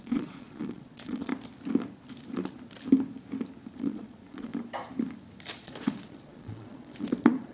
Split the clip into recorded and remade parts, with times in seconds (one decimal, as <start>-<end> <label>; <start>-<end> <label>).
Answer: 0.0-1.3 remade; 1.3-3.8 recorded; 3.8-4.5 remade; 4.5-5.5 recorded; 5.5-7.5 remade